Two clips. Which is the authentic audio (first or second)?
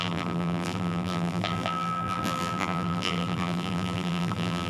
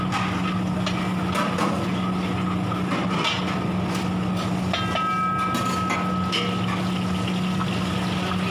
second